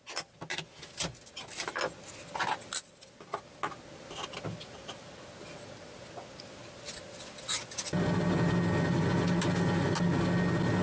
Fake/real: real